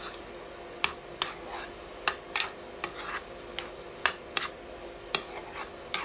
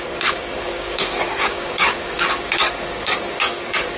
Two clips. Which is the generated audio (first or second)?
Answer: second